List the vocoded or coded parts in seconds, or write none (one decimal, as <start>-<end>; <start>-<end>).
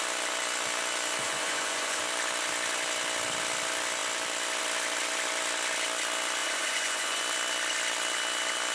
1.2-2.0; 6.4-7.2